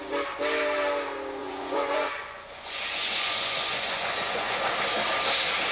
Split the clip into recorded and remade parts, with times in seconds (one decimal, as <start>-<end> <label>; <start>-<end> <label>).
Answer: 0.0-1.4 recorded; 1.4-4.6 remade; 4.6-5.7 recorded